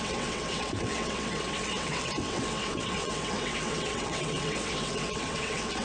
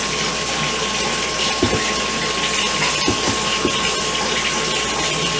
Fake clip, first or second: first